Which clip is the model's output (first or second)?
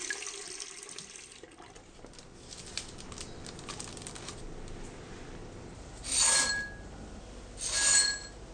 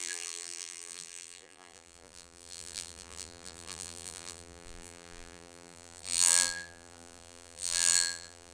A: second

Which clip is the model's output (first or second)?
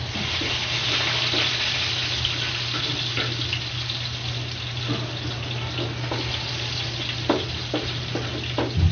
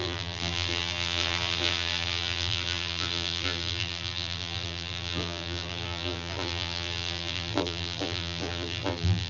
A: second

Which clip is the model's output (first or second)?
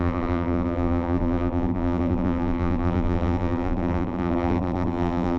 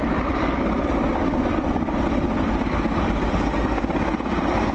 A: first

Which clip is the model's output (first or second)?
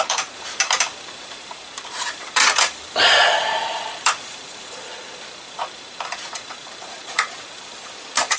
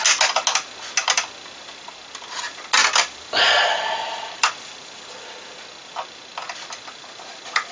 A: first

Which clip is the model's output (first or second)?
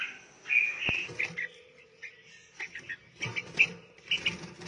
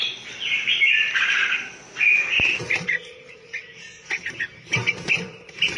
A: second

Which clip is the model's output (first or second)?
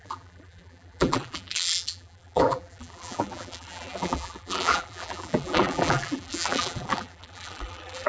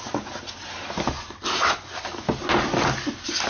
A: first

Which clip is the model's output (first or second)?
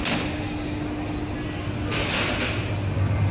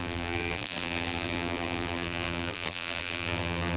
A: second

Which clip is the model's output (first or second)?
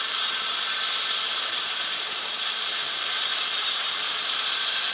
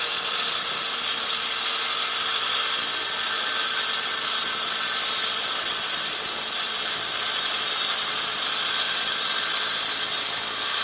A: first